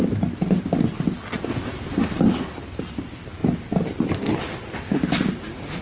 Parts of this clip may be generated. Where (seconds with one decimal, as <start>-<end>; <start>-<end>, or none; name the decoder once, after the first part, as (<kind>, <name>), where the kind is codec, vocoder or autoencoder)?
none